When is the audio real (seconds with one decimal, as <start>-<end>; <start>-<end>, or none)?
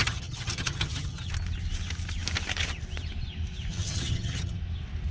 1.3-3.7; 4.6-5.1